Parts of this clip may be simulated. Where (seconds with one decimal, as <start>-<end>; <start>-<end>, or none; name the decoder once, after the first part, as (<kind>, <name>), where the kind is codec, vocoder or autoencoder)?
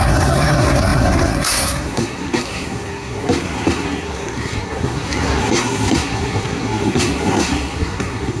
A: 0.0-8.4 (codec, SNAC)